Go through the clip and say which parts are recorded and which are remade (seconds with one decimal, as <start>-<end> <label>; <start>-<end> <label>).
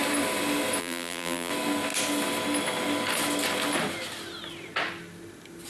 0.0-0.8 recorded; 0.8-1.5 remade; 1.5-5.7 recorded